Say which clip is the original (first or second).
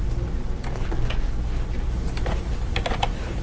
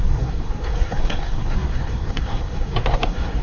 first